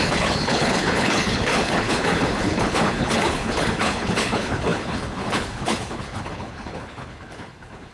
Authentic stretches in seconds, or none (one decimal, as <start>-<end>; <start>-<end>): none